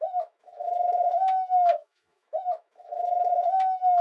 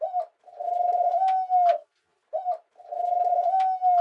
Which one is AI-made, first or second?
first